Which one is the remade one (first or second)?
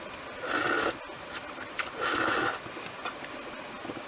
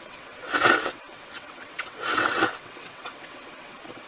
second